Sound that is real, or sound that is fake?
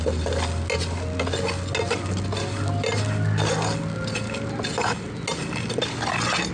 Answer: real